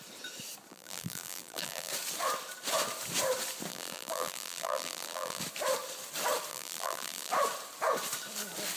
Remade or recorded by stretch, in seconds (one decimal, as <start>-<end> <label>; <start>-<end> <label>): 0.0-0.7 recorded; 0.7-1.9 remade; 1.9-3.7 recorded; 3.7-5.4 remade; 5.4-6.5 recorded; 6.5-7.3 remade; 7.3-8.8 recorded